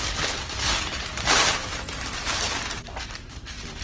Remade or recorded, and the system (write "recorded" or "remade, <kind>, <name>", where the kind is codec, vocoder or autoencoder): remade, vocoder, BigVGAN v2